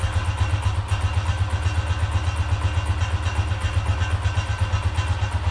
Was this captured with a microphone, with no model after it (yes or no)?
yes